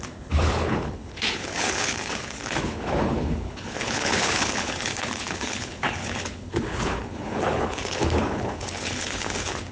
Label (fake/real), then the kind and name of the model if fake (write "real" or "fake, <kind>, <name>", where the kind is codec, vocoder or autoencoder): fake, codec, HILCodec